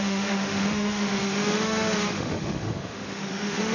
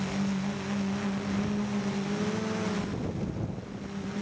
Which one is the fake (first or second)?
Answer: first